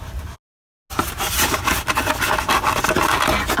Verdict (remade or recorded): recorded